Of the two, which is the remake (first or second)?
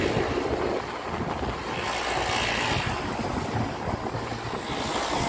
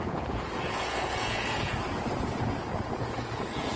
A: second